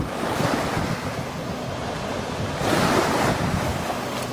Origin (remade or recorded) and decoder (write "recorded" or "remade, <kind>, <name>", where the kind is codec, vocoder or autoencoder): recorded